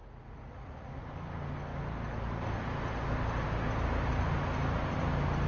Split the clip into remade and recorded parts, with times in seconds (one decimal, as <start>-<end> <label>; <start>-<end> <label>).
0.0-1.0 remade; 1.0-5.5 recorded